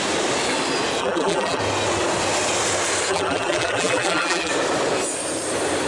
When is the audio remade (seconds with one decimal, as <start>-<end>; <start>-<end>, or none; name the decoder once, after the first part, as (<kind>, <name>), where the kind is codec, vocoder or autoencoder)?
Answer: 1.0-1.6 (vocoder, BigVGAN v2); 3.1-4.5